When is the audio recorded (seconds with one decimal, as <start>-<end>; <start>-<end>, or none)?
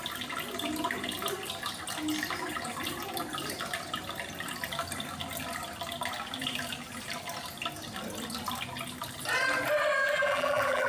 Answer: 0.0-10.0